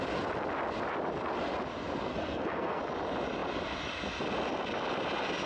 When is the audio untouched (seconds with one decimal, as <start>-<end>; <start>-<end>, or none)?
0.0-2.1; 2.8-5.5